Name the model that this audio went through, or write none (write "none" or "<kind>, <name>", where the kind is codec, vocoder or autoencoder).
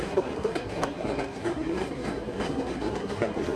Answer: codec, SNAC